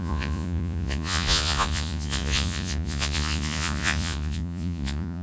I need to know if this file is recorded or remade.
remade